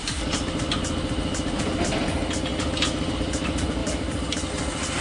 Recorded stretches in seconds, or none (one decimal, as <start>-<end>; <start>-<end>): 0.0-3.8; 4.5-5.0